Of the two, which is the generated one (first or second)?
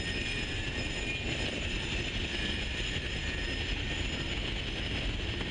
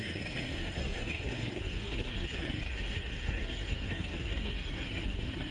second